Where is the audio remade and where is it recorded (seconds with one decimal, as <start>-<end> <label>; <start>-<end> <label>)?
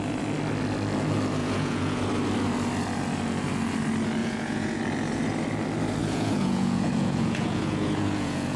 0.0-1.4 recorded; 1.4-2.0 remade; 2.0-4.2 recorded; 4.2-4.8 remade; 4.8-6.0 recorded; 6.0-8.6 remade